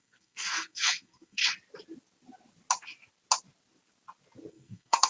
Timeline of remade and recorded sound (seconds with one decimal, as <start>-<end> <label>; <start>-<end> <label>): 0.0-1.4 remade; 1.4-4.5 recorded; 4.5-5.1 remade